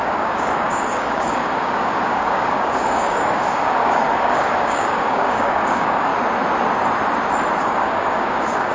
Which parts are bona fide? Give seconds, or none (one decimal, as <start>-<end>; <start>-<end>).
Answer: 6.1-7.6